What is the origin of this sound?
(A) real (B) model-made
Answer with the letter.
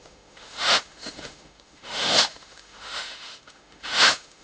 B